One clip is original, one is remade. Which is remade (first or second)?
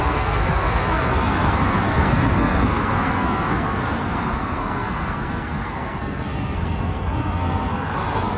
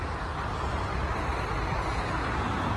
first